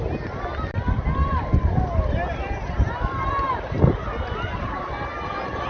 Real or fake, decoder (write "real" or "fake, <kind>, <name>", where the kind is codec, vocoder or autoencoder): real